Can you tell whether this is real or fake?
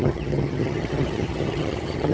fake